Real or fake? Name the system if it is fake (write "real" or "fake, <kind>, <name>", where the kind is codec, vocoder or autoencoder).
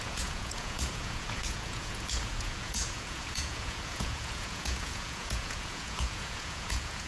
fake, vocoder, Vocos